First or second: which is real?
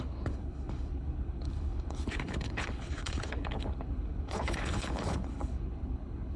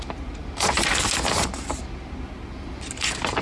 second